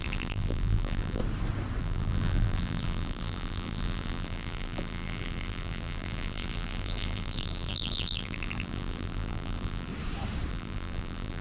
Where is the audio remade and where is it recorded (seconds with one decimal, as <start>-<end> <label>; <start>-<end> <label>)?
0.0-1.2 remade; 1.2-1.8 recorded; 1.8-9.9 remade; 9.9-10.5 recorded; 10.5-11.4 remade